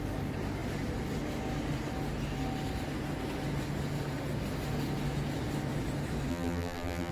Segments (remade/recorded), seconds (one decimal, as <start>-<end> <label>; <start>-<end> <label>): 0.0-6.3 recorded; 6.3-7.1 remade